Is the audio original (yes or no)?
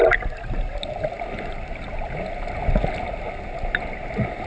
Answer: yes